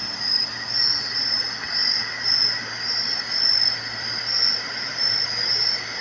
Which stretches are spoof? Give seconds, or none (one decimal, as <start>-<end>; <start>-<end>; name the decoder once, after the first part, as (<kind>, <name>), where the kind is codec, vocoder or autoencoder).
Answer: none